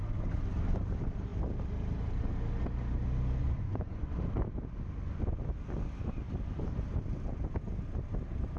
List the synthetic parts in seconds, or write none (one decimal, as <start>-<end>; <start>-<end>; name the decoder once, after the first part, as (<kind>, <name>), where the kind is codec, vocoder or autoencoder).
3.4-4.1 (vocoder, Vocos)

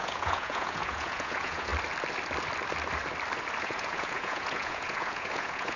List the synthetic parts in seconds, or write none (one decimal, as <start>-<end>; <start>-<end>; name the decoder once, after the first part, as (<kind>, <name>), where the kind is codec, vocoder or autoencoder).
0.0-1.7 (vocoder, Vocos); 3.6-5.8